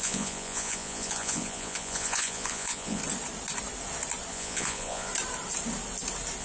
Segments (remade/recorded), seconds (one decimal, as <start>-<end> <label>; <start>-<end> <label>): 0.0-3.0 remade; 3.0-4.3 recorded; 4.3-5.1 remade; 5.1-6.4 recorded